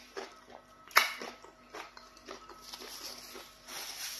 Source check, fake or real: real